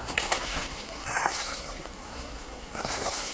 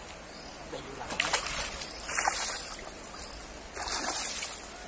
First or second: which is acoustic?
second